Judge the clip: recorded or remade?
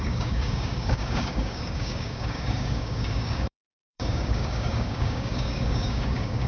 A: remade